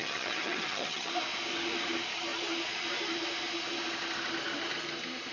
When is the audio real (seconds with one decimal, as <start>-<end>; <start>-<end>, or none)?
1.1-5.3

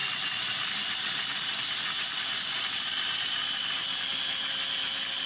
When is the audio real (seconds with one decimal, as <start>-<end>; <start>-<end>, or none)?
0.0-5.3

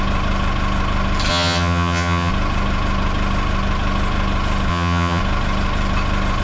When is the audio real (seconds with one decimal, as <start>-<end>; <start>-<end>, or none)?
0.0-1.3; 2.3-4.7; 5.2-6.4